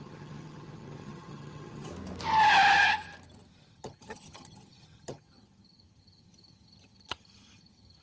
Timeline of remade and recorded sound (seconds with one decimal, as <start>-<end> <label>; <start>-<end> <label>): 0.0-1.9 remade; 1.9-3.7 recorded; 3.7-8.0 remade